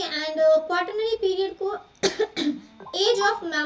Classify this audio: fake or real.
real